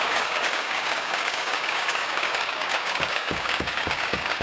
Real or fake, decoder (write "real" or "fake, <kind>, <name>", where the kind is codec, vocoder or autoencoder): fake, codec, DAC